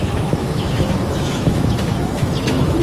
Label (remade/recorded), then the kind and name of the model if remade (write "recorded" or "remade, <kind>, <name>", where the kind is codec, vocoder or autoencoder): remade, autoencoder, DAC-VAE